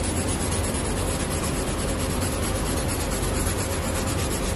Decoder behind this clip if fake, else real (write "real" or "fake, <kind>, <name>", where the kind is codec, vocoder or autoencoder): real